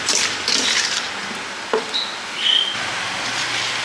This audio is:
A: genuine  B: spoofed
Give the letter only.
A